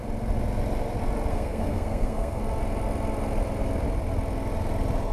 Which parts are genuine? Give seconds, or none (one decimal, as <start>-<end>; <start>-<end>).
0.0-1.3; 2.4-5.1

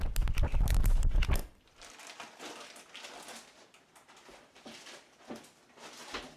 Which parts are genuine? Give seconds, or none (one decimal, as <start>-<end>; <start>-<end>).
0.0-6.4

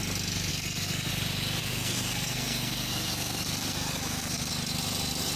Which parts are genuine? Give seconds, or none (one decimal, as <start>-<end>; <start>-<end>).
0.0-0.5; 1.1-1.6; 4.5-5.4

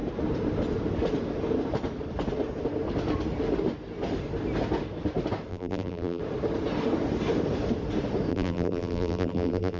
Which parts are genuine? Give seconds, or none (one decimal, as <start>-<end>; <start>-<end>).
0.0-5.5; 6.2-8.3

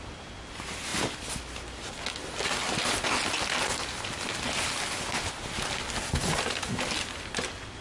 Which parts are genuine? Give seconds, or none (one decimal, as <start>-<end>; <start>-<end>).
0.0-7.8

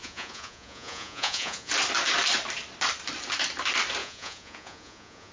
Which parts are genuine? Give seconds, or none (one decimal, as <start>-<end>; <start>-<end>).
1.7-4.0

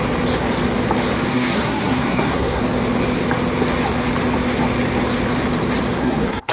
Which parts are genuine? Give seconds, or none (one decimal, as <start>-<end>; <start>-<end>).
0.0-1.3; 2.6-6.0

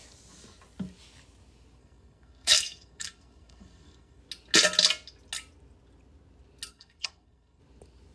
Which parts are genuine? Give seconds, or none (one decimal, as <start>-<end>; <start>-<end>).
0.0-1.8; 4.2-6.7; 7.6-8.1